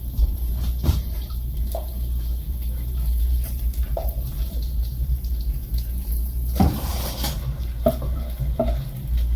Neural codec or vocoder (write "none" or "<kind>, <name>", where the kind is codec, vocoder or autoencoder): vocoder, BigVGAN v2